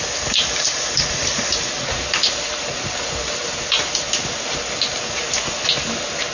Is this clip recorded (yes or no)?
yes